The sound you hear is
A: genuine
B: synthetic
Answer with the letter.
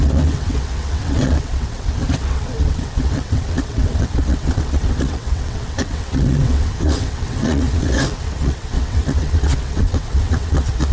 B